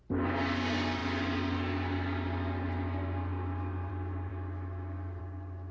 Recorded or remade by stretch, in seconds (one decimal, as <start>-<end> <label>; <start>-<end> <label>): 0.0-4.3 recorded; 4.3-5.2 remade; 5.2-5.7 recorded